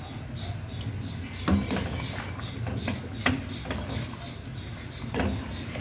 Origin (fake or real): real